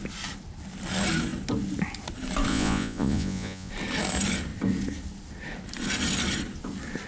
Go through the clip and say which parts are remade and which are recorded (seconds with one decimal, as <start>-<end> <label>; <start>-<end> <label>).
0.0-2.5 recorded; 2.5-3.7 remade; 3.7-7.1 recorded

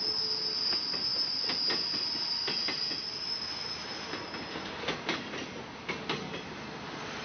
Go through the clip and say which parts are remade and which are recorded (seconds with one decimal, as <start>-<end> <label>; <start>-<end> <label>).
0.0-7.2 recorded

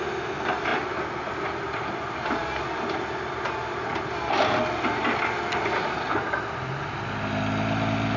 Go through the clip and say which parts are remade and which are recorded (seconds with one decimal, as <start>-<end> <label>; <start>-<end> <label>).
0.0-8.2 recorded

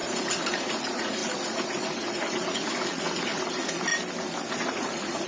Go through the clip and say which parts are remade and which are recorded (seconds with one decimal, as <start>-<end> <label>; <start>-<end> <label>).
0.0-3.9 remade; 3.9-4.5 recorded; 4.5-5.3 remade

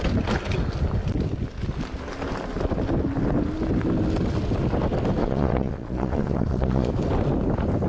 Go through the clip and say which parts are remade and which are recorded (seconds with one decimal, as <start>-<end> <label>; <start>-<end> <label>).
0.0-5.2 recorded; 5.2-6.9 remade; 6.9-7.9 recorded

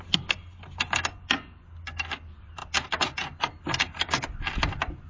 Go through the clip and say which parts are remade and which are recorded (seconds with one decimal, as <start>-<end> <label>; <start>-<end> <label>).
0.0-5.1 recorded

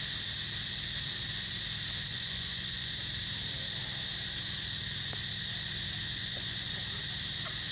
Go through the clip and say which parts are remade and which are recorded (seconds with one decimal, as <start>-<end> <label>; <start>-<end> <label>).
0.0-2.1 recorded; 2.1-2.9 remade; 2.9-6.2 recorded; 6.2-6.7 remade; 6.7-7.7 recorded